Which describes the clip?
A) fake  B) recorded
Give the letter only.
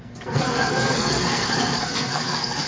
A